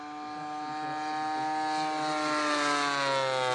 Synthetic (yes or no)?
no